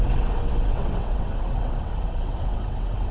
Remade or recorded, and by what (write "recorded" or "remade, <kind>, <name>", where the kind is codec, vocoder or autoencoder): remade, vocoder, WaveNeXt